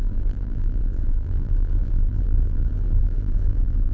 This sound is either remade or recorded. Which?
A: remade